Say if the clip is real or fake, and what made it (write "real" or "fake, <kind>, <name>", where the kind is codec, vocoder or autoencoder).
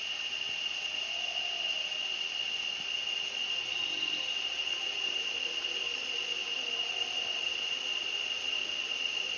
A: real